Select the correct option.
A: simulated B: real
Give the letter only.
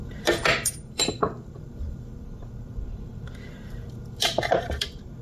A